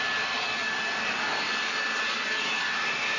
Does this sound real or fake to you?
real